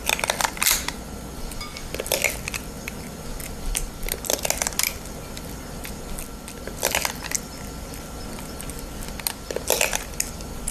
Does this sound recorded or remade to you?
recorded